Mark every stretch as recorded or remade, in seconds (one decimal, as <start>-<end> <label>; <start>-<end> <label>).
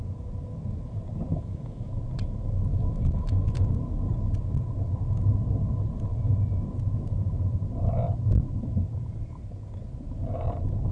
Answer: 0.0-1.3 recorded; 1.3-1.9 remade; 1.9-2.7 recorded; 2.7-3.7 remade; 3.7-10.9 recorded